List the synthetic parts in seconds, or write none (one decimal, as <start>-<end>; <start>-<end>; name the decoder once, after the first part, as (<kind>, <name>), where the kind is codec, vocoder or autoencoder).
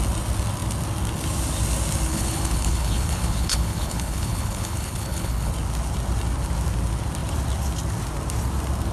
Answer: 2.1-5.5 (codec, HILCodec)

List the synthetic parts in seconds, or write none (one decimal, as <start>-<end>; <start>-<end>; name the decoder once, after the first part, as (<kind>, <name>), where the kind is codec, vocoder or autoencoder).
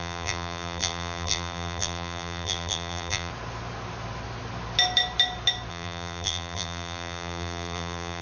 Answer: 0.0-3.3 (vocoder, BigVGAN v2); 5.7-8.2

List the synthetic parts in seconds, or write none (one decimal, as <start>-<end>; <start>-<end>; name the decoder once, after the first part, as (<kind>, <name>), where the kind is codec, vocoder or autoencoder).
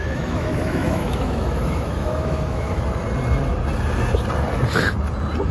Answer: 0.0-2.8 (autoencoder, DAC-VAE)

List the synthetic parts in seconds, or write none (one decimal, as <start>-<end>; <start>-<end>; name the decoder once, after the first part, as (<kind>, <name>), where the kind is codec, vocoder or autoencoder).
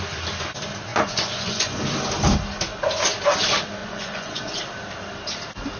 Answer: 0.9-1.7 (vocoder, Vocos); 3.8-4.6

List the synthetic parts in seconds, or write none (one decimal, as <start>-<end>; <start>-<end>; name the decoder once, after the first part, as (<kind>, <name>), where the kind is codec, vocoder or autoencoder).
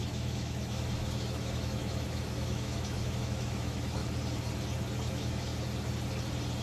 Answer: 0.0-4.0 (autoencoder, DAC-VAE); 5.1-5.5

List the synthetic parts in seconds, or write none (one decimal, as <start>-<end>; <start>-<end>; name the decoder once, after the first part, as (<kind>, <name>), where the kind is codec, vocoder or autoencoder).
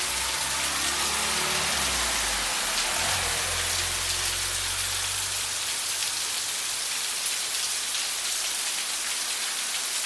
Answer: none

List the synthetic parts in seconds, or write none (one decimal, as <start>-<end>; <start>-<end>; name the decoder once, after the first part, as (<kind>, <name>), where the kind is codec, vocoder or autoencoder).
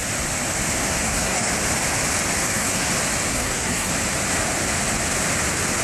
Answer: 1.0-1.5 (codec, SNAC); 2.4-2.9; 3.3-3.9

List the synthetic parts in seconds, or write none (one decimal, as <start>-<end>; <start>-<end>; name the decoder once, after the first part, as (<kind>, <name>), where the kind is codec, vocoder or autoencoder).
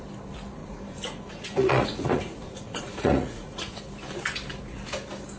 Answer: 0.6-3.8 (vocoder, Vocos)